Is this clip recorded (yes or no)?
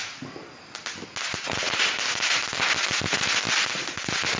yes